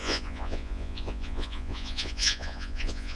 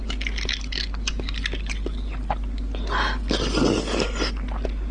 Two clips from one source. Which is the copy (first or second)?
first